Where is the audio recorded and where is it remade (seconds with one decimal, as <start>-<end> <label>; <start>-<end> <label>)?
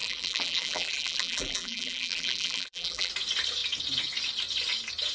0.0-3.1 remade; 3.1-5.1 recorded